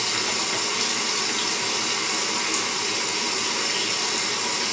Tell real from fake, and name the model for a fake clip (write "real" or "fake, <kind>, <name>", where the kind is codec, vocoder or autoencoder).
real